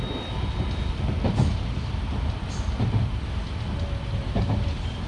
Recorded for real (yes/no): yes